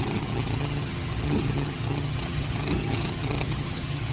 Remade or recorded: remade